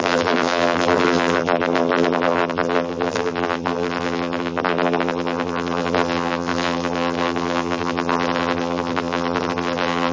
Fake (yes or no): yes